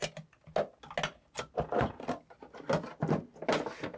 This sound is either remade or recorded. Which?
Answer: recorded